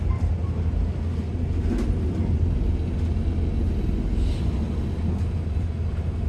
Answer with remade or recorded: recorded